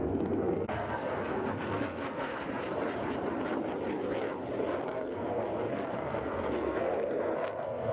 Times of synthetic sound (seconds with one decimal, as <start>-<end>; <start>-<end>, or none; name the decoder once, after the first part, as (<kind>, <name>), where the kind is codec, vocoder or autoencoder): 0.0-2.3 (codec, SNAC); 4.8-7.9